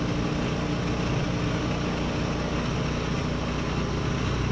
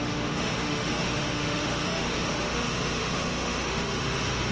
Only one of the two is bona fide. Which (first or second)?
first